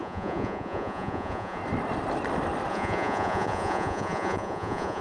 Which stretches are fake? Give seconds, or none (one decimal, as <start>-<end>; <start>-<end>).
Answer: 0.0-1.6; 2.7-5.0